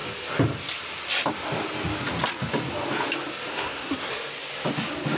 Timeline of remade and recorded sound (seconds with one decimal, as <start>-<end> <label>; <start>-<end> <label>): 0.0-3.5 recorded; 3.5-4.1 remade; 4.1-5.2 recorded